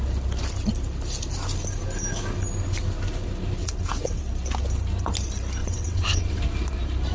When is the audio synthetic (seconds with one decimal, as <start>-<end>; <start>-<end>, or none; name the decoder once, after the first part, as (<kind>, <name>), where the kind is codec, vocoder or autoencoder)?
3.6-4.2 (vocoder, WaveNeXt); 5.6-6.4